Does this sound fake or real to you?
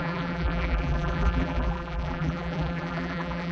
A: fake